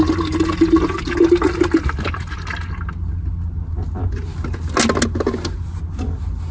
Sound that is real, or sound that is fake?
real